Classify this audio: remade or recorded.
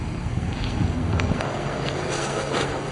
remade